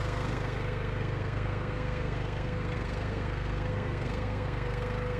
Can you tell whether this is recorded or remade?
remade